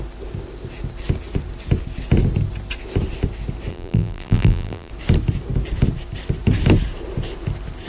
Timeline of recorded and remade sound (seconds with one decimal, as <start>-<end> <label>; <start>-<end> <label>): 0.0-3.7 recorded; 3.7-4.9 remade; 4.9-7.9 recorded